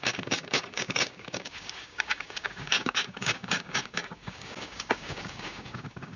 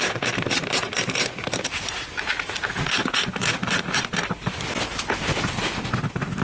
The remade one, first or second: first